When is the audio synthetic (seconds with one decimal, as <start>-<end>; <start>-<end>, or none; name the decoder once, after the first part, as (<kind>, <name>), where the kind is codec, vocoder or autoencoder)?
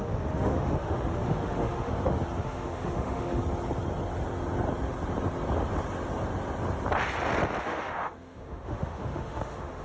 0.0-1.9 (autoencoder, DAC-VAE); 2.4-3.4; 7.6-9.8